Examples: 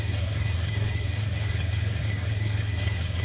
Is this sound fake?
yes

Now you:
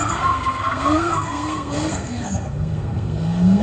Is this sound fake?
yes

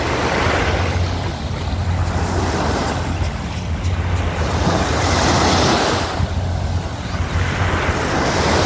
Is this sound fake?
no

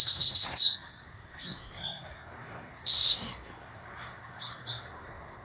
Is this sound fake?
yes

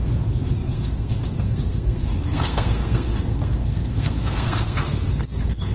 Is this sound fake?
yes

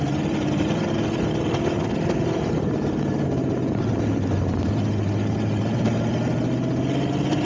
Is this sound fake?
no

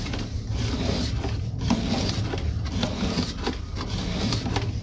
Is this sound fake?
no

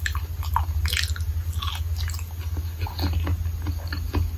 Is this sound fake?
no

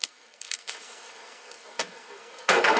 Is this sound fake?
yes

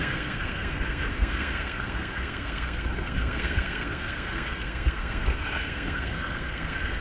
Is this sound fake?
yes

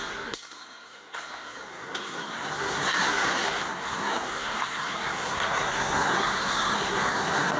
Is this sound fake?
yes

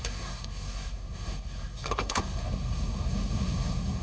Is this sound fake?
yes